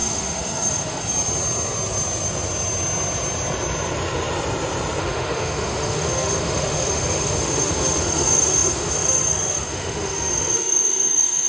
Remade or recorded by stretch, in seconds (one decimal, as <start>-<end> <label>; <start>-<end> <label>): 0.0-1.0 remade; 1.0-5.0 recorded; 5.0-11.5 remade